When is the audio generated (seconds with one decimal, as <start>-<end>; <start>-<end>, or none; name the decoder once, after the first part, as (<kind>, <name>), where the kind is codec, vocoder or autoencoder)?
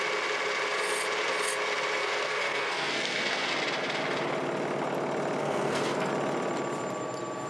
2.0-3.5 (codec, SNAC); 5.4-6.1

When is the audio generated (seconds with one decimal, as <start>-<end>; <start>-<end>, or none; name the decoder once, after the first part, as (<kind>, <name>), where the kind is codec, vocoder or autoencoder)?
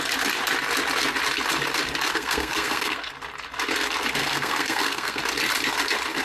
2.1-3.1 (codec, SNAC); 4.2-5.2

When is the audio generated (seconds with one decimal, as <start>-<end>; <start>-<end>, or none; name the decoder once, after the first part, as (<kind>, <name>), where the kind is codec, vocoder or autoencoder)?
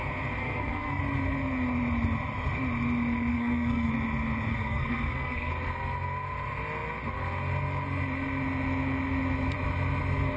0.4-1.0 (codec, SNAC); 3.3-3.9; 4.5-5.5